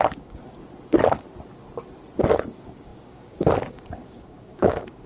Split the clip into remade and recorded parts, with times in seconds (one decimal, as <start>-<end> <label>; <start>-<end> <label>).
0.0-0.4 remade; 0.4-2.2 recorded; 2.2-5.1 remade